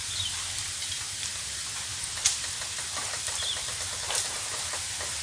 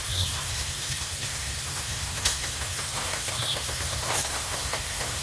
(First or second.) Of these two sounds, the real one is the first